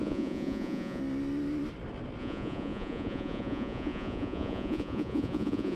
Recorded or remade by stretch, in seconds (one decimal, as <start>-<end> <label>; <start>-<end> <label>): 0.0-1.0 remade; 1.0-2.2 recorded; 2.2-5.8 remade

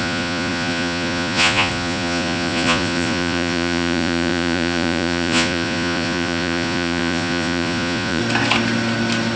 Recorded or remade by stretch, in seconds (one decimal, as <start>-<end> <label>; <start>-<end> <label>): 0.0-8.2 remade; 8.2-9.4 recorded

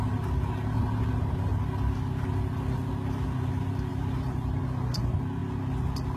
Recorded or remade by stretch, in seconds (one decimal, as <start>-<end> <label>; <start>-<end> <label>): 0.0-3.9 recorded; 3.9-4.6 remade; 4.6-6.2 recorded